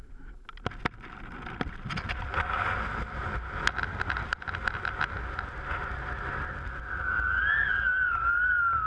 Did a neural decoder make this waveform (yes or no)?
no